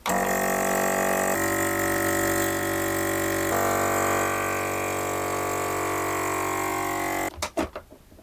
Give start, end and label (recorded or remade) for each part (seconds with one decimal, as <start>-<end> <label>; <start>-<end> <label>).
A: 0.0-8.2 recorded